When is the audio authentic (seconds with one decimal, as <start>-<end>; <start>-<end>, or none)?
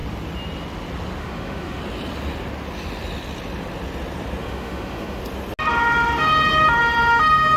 0.0-1.2; 1.8-4.4; 5.2-7.6